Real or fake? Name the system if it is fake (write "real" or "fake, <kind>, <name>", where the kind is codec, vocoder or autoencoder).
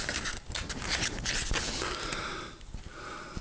real